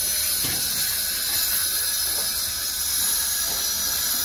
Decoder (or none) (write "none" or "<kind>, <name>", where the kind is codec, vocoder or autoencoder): none